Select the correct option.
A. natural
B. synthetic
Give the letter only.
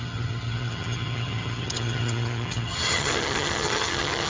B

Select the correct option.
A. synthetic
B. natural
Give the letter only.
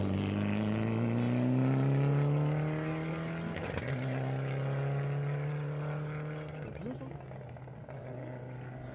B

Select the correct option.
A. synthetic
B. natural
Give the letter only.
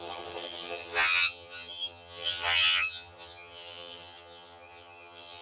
A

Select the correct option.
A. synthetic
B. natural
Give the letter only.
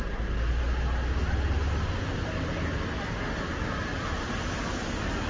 B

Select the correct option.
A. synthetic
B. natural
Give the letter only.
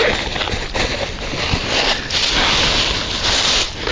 B